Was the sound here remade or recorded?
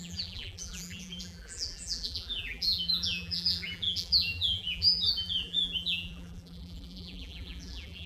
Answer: remade